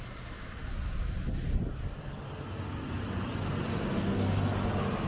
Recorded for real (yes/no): yes